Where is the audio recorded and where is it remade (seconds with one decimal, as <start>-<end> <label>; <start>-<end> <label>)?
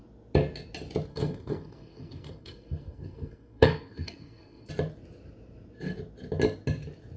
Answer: 0.0-1.1 recorded; 1.1-4.7 remade; 4.7-7.2 recorded